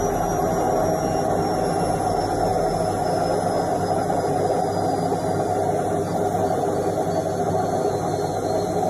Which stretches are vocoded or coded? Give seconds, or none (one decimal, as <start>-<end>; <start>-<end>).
none